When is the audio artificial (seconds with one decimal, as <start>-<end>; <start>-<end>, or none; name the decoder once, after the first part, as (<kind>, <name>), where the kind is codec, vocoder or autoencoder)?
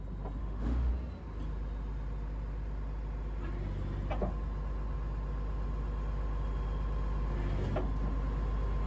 0.4-0.9 (autoencoder, DAC-VAE)